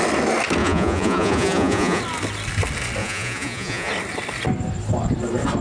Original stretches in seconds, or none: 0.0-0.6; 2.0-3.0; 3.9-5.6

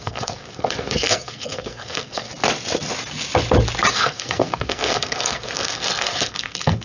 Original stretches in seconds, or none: 2.3-3.9

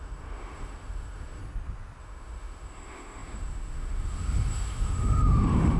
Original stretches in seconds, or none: 1.4-2.0

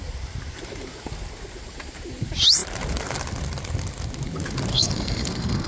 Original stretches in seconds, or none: 0.0-4.7

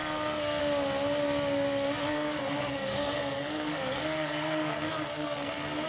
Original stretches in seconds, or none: 0.6-2.0; 5.5-5.9

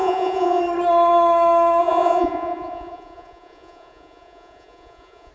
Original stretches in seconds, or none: 0.6-1.8

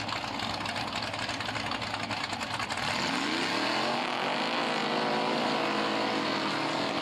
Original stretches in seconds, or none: 0.0-7.0

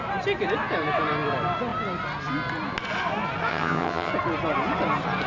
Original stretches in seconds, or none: 0.0-3.5; 4.1-5.3